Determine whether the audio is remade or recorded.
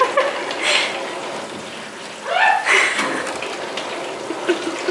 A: recorded